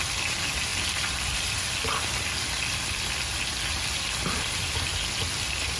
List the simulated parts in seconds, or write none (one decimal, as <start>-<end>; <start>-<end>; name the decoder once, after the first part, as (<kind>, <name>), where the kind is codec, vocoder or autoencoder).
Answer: none